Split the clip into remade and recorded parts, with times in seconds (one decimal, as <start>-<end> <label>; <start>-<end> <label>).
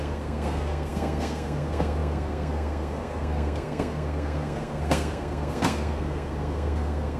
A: 0.0-7.2 remade